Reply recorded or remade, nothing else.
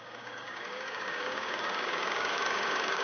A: remade